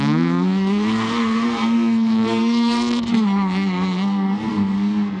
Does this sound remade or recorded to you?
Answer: remade